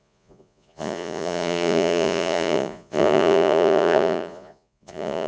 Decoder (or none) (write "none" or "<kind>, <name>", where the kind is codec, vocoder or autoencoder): vocoder, Vocos